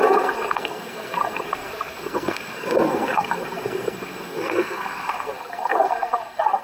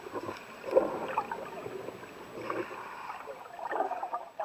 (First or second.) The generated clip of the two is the first